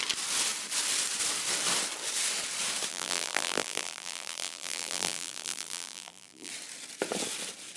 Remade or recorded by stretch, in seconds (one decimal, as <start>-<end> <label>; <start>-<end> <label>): 0.0-2.9 recorded; 2.9-6.5 remade; 6.5-7.8 recorded